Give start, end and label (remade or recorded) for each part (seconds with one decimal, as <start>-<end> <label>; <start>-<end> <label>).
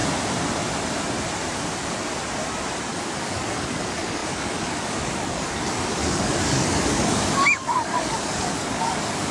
0.0-2.8 recorded; 2.8-9.3 remade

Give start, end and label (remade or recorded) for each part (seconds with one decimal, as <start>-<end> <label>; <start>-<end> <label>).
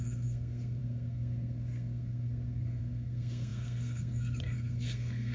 0.0-5.3 remade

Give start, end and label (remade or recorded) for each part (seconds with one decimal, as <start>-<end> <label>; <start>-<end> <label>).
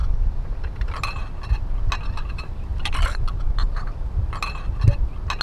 0.0-5.4 recorded